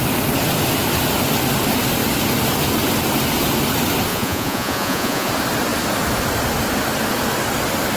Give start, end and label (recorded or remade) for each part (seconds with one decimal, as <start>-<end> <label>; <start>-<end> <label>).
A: 0.0-4.1 recorded; 4.1-5.3 remade; 5.3-8.0 recorded